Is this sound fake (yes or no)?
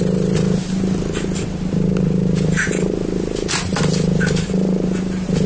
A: no